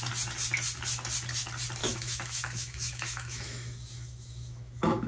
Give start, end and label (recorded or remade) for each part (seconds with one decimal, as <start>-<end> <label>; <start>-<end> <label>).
0.0-1.8 recorded; 1.8-5.1 remade